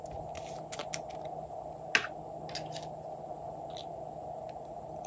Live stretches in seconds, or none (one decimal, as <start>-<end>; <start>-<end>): 0.0-5.1